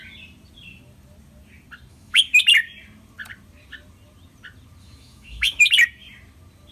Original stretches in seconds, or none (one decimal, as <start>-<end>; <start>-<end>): 0.0-1.9; 2.4-4.8; 5.7-6.7